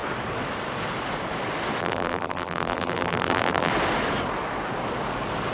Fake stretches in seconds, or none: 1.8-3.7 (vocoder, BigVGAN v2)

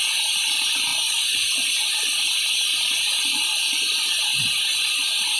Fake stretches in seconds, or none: 0.0-5.4 (vocoder, BigVGAN v2)

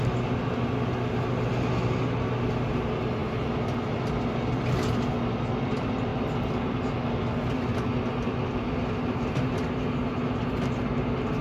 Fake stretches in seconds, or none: 3.2-4.2 (vocoder, BigVGAN v2)

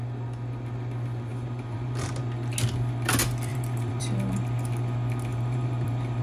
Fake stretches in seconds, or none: 1.3-2.2 (vocoder, BigVGAN v2); 3.5-4.0; 5.3-6.2

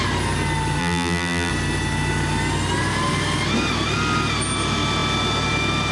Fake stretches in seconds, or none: 0.8-1.5 (vocoder, BigVGAN v2)

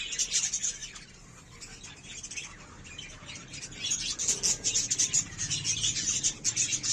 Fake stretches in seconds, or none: none

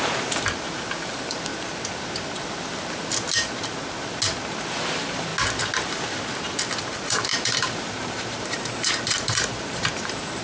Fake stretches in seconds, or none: 0.0-1.5 (vocoder, BigVGAN v2); 4.8-5.3; 6.8-10.4

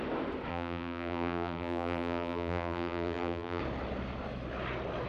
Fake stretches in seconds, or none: 0.5-3.6 (vocoder, BigVGAN v2)